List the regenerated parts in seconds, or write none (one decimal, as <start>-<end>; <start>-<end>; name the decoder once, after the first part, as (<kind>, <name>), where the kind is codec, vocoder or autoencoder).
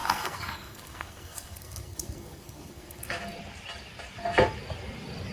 0.0-3.2 (codec, SNAC)